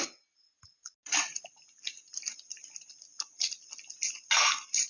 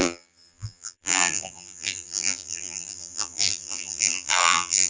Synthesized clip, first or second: second